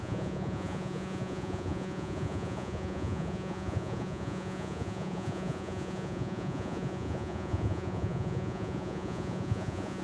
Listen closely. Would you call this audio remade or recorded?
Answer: remade